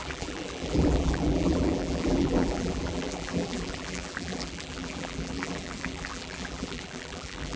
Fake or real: fake